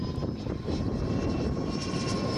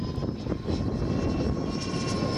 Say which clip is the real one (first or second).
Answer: second